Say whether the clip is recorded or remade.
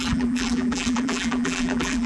remade